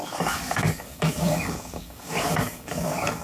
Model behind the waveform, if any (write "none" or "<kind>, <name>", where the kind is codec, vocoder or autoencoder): codec, DAC